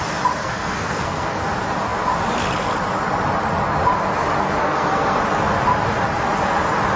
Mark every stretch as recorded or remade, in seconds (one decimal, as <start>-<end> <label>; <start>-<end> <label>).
0.0-0.4 recorded; 0.4-1.4 remade; 1.4-4.6 recorded; 4.6-5.2 remade; 5.2-7.0 recorded